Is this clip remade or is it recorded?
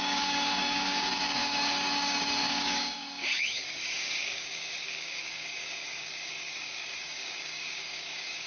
remade